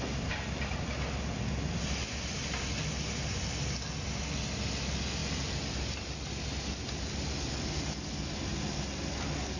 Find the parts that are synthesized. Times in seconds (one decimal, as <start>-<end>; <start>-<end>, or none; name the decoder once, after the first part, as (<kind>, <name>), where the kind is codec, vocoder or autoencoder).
none